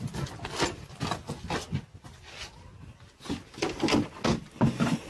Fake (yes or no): no